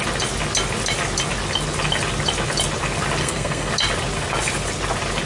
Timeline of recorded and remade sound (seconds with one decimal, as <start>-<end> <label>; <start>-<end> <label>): 0.0-3.2 recorded; 3.2-3.7 remade; 3.7-5.3 recorded